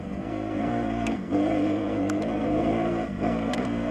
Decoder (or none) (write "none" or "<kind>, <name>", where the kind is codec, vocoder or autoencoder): codec, SNAC